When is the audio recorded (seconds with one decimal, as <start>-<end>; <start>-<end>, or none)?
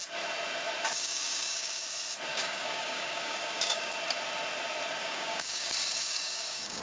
0.0-0.9; 1.9-2.3; 3.9-5.0